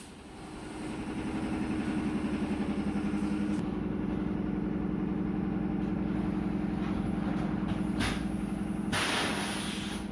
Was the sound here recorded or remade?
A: recorded